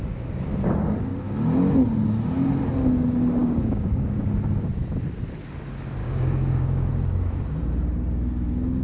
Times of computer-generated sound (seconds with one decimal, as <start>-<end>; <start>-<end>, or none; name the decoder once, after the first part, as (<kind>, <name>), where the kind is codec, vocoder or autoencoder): 3.4-4.2 (codec, DAC); 6.0-6.9

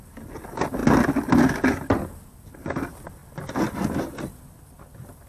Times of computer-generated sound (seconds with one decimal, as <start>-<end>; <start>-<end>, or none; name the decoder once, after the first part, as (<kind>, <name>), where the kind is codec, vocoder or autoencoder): none

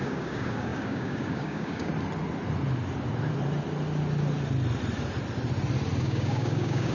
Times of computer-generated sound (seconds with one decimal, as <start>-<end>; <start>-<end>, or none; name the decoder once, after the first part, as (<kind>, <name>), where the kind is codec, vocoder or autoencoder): 0.0-1.9 (codec, DAC); 6.0-6.9

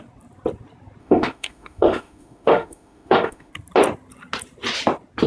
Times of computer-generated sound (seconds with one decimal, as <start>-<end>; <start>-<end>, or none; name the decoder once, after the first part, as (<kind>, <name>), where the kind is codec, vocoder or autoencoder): 1.0-3.5 (autoencoder, DAC-VAE)